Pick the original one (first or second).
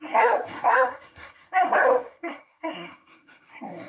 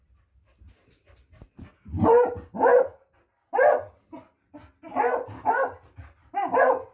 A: second